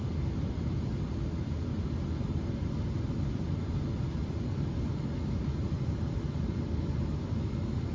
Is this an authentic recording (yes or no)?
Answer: yes